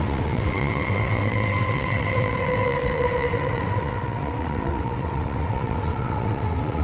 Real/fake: fake